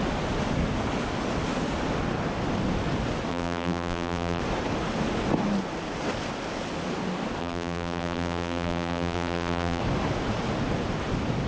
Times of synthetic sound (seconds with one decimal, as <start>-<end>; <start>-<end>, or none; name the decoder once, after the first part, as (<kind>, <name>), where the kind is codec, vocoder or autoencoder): 3.3-4.4 (vocoder, BigVGAN v2); 7.4-9.8